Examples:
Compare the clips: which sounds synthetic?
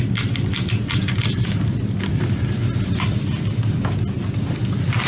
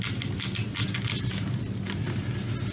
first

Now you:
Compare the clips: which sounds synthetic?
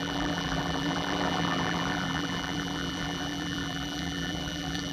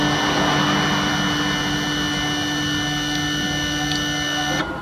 first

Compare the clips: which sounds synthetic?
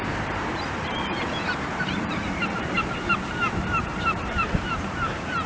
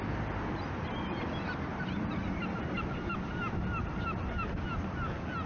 first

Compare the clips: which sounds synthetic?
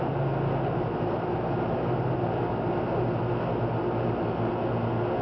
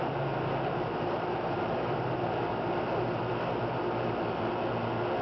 second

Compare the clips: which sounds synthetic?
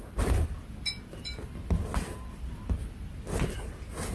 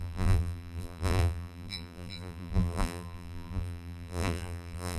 second